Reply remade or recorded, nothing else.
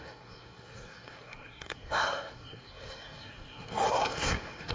remade